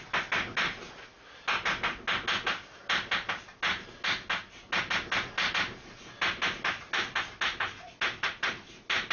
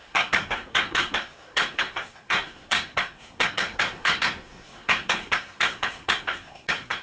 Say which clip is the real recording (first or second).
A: first